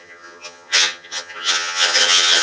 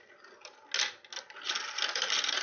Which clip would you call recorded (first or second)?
second